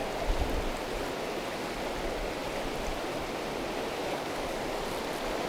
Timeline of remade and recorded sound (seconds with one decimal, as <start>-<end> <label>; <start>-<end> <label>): 0.0-4.0 recorded; 4.0-4.8 remade; 4.8-5.5 recorded